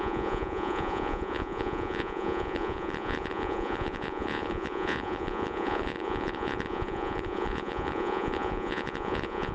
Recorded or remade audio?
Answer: remade